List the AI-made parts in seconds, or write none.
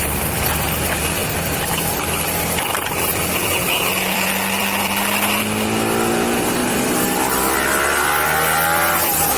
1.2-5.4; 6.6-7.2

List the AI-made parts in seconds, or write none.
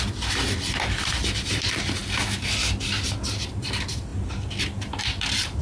0.0-2.0; 3.5-4.1; 5.0-5.6